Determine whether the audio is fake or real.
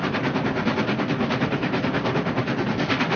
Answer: real